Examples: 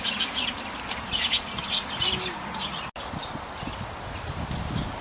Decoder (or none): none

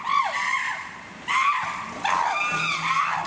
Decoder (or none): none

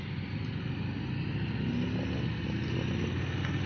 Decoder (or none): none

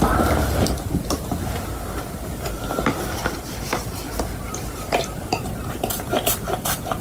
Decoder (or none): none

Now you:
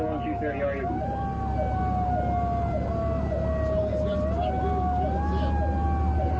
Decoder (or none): none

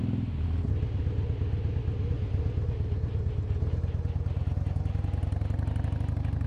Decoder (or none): none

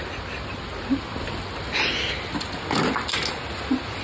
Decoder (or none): none